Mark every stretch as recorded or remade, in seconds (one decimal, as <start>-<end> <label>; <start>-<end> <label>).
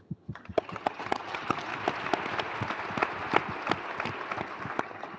0.0-1.7 remade; 1.7-4.8 recorded; 4.8-5.2 remade